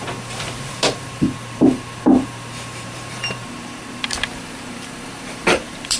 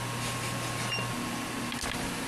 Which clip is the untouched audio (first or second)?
second